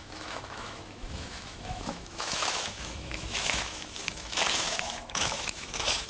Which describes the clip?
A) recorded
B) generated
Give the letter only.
B